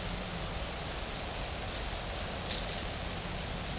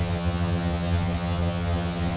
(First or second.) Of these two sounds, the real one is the first